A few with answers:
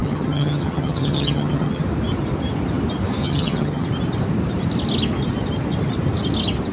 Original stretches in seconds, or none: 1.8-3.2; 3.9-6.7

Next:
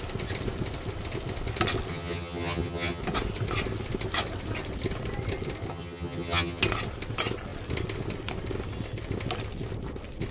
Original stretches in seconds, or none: 0.0-1.9; 3.0-5.7; 6.6-10.3

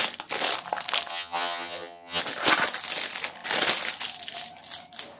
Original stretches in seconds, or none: 0.0-1.1; 2.2-5.2

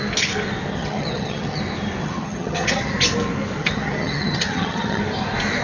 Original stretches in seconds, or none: 0.0-0.7; 1.6-2.0; 2.9-3.6; 5.0-5.6

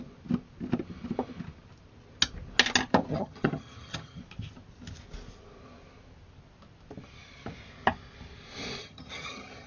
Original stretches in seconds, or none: 0.0-3.1; 4.2-8.8

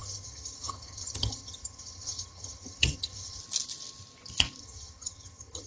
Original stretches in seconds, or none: 3.4-4.6

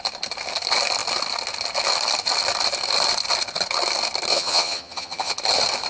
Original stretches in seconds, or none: 0.0-4.3; 5.3-5.9